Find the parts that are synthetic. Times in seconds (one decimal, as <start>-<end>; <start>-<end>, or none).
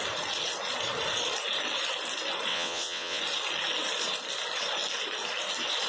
2.5-3.2